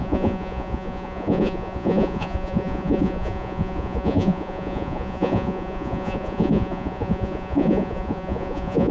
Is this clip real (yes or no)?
no